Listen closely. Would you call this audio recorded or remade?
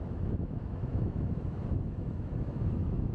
remade